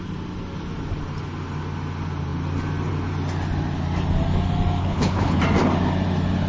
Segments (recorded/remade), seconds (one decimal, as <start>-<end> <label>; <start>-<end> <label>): 0.0-4.8 recorded; 4.8-5.4 remade; 5.4-6.5 recorded